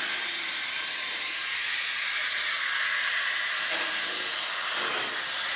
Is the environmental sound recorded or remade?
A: recorded